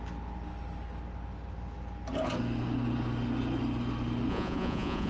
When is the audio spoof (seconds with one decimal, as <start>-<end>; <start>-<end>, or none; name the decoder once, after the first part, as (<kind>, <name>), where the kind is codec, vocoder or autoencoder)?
4.3-5.1 (vocoder, Vocos)